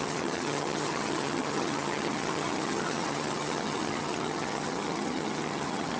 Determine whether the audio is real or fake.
fake